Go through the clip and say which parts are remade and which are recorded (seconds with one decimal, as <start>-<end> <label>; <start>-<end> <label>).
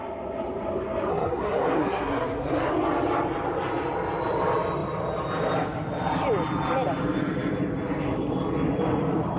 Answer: 0.0-1.1 recorded; 1.1-2.7 remade; 2.7-9.4 recorded